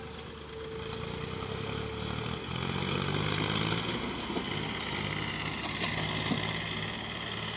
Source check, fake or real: real